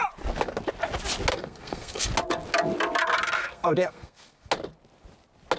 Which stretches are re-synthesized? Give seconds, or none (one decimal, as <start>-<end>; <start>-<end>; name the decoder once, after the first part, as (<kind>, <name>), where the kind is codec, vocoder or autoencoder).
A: 1.3-2.1 (codec, SNAC); 3.4-4.5